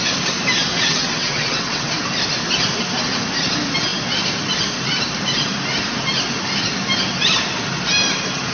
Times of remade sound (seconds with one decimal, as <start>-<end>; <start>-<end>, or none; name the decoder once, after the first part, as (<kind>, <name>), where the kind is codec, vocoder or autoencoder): 0.7-1.9 (vocoder, WaveNeXt)

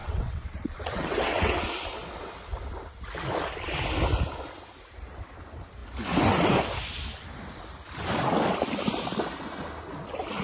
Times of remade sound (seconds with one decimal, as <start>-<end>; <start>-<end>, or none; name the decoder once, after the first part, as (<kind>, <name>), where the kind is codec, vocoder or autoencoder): 0.0-1.6 (vocoder, WaveNeXt)

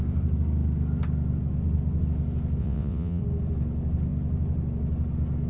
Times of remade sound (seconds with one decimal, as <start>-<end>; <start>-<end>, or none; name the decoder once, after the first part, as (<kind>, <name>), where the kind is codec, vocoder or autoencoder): 2.6-3.2 (vocoder, WaveNeXt)

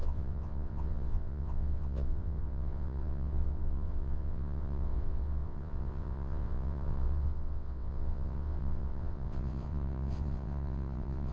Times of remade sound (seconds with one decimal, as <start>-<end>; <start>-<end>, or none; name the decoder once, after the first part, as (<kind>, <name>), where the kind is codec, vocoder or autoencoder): 0.0-11.3 (vocoder, WaveNeXt)

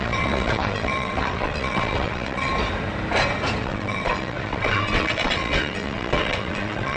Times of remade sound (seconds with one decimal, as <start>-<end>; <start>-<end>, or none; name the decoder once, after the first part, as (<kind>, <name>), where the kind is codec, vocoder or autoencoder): 0.0-2.5 (vocoder, WaveNeXt); 3.6-7.0